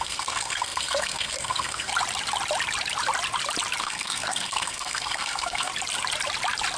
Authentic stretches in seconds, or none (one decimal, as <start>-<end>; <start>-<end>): 1.9-3.8; 5.7-6.8